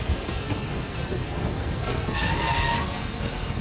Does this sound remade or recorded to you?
remade